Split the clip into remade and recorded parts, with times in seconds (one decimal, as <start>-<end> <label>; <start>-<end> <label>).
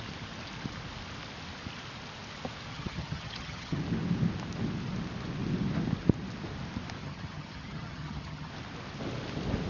0.0-2.7 recorded; 2.7-3.8 remade; 3.8-7.0 recorded; 7.0-8.5 remade; 8.5-9.7 recorded